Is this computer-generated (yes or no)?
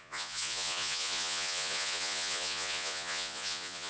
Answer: yes